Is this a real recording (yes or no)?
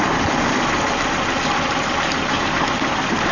yes